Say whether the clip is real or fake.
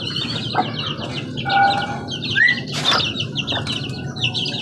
real